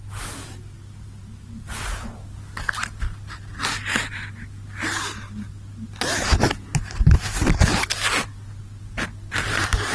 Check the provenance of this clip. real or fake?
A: real